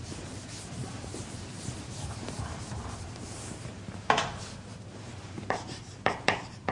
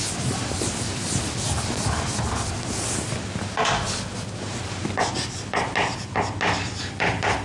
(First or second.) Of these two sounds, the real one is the second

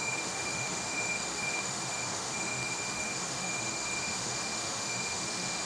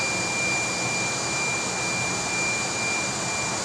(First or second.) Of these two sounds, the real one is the second